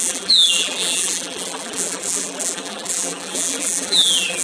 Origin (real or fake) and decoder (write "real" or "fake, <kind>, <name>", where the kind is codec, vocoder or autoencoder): fake, vocoder, BigVGAN v2